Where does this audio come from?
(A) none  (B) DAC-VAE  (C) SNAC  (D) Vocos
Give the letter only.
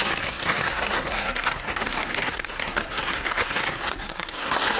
C